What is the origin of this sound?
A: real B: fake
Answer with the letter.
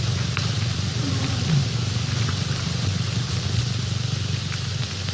A